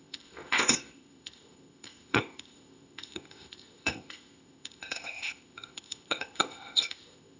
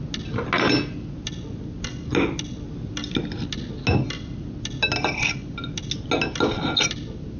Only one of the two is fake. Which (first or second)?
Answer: first